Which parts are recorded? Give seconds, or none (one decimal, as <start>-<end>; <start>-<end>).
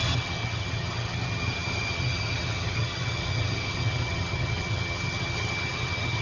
none